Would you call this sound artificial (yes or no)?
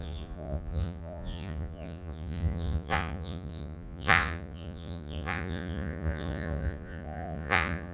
yes